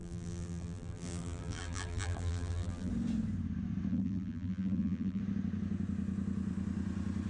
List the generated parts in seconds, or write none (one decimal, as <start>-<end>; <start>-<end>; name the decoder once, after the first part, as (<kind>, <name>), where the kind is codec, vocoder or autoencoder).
0.0-2.9 (vocoder, BigVGAN v2); 3.9-5.2